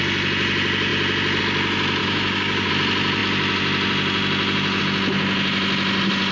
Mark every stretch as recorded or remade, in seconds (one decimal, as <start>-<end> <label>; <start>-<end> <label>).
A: 0.0-2.0 recorded; 2.0-2.7 remade; 2.7-6.3 recorded